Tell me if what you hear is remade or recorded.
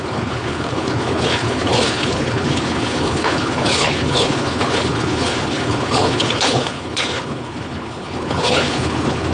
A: remade